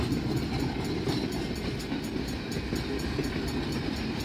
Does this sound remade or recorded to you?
recorded